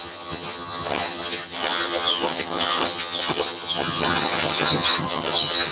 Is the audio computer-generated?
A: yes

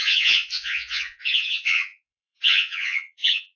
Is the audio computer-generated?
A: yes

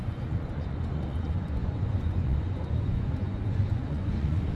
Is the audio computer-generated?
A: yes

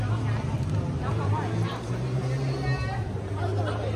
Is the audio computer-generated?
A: no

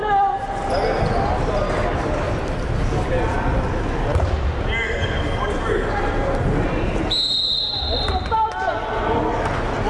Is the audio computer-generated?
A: no